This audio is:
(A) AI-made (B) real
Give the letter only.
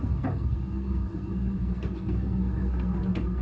A